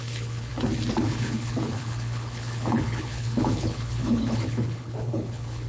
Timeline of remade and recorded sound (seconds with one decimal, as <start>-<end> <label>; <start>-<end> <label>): 0.0-0.5 remade; 0.5-1.0 recorded; 1.0-5.7 remade